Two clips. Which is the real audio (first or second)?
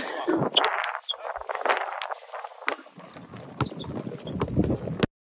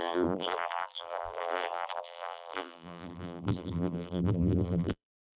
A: first